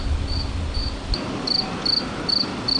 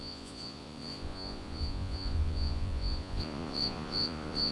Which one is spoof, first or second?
second